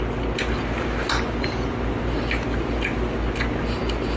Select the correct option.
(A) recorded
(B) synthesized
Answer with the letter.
A